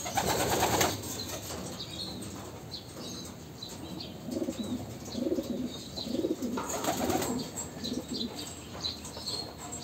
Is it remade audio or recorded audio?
recorded